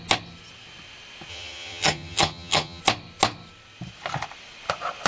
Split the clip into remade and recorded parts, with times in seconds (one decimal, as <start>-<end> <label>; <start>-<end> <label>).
0.0-1.3 recorded; 1.3-2.8 remade; 2.8-5.1 recorded